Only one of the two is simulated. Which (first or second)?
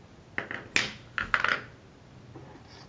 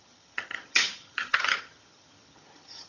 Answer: second